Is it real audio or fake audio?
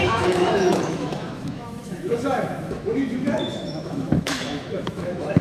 fake